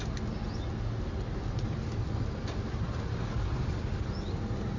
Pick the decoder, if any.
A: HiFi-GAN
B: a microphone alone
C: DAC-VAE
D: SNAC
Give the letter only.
B